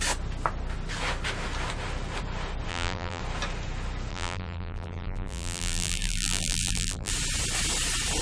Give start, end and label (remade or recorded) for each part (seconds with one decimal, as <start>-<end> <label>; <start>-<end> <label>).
0.0-2.7 recorded; 2.7-3.2 remade; 3.2-4.1 recorded; 4.1-7.1 remade; 7.1-8.2 recorded